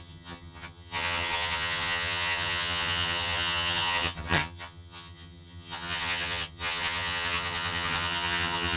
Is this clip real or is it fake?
fake